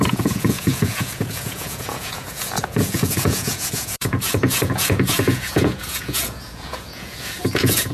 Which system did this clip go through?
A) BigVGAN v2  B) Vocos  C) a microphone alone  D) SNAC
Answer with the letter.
B